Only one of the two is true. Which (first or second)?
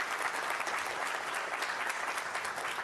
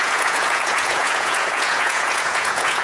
first